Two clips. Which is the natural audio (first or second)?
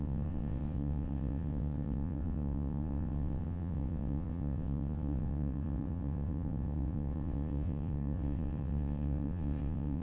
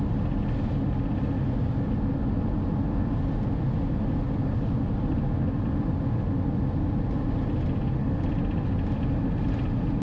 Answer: second